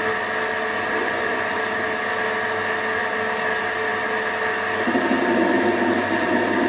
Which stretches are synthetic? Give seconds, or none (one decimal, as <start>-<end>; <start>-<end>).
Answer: 1.0-1.6